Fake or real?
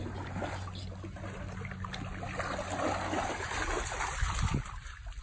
real